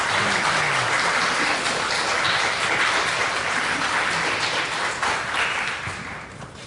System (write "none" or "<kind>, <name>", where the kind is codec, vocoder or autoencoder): vocoder, BigVGAN v2